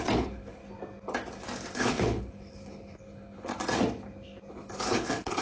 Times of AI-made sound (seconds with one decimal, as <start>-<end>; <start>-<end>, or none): 0.0-0.6; 1.7-3.5; 4.5-5.4